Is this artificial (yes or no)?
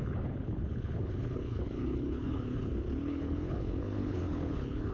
yes